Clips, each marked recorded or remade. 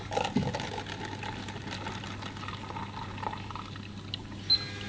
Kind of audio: recorded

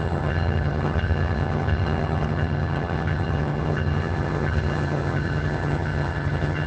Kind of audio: remade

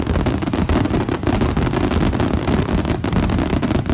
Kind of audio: recorded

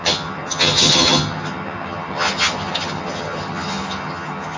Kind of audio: remade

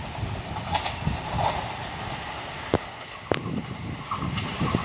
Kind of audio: recorded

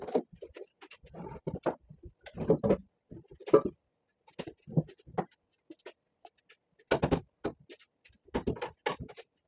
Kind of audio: recorded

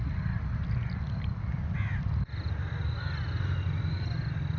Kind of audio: recorded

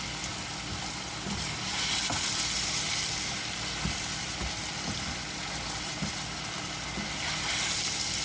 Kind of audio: recorded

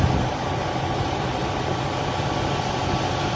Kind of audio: recorded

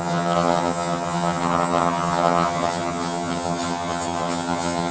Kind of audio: remade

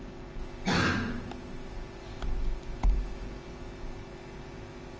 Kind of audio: recorded